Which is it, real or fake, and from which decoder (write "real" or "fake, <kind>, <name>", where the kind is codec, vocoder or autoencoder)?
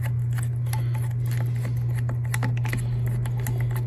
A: real